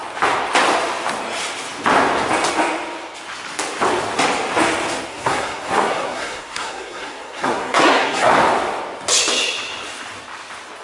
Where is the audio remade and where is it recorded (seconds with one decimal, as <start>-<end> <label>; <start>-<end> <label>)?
0.0-5.1 recorded; 5.1-8.3 remade; 8.3-10.8 recorded

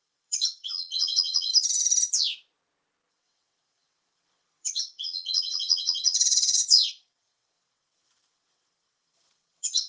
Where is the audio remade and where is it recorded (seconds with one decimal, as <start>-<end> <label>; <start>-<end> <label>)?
0.0-1.5 remade; 1.5-3.1 recorded; 3.1-9.9 remade

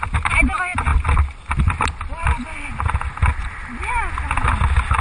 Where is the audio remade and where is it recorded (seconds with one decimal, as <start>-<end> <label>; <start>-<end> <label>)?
0.0-5.0 recorded

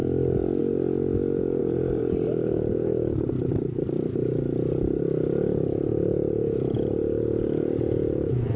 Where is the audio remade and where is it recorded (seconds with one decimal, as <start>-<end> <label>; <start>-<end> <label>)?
0.0-1.6 recorded; 1.6-5.0 remade; 5.0-8.6 recorded